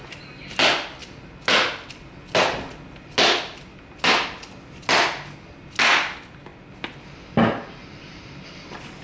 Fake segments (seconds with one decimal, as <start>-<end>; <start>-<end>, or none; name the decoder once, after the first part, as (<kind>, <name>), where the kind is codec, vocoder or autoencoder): none